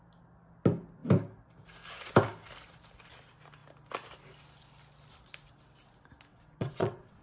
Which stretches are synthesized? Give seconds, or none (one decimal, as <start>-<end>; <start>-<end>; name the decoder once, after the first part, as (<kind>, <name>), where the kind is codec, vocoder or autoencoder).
6.3-7.2 (vocoder, WaveNeXt)